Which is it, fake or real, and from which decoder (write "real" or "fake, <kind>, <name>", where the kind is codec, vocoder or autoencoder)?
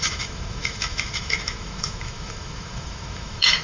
fake, autoencoder, DAC-VAE